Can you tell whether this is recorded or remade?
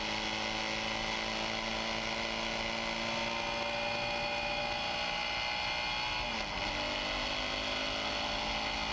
recorded